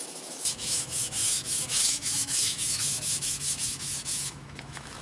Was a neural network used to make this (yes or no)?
yes